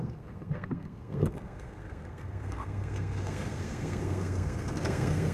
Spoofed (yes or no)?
yes